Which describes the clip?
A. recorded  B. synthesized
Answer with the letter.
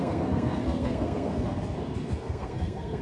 B